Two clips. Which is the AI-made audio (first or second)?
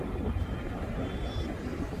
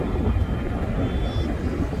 first